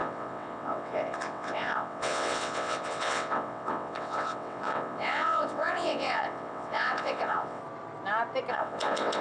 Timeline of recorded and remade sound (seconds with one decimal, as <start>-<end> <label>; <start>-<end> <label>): 0.0-7.6 remade; 7.6-8.5 recorded; 8.5-9.2 remade